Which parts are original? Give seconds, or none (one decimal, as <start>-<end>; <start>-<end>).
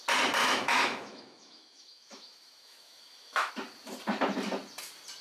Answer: 0.0-0.4; 3.5-5.2